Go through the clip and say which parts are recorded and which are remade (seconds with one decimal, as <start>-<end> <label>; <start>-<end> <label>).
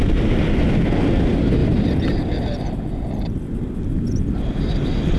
0.0-1.6 recorded; 1.6-4.7 remade; 4.7-5.2 recorded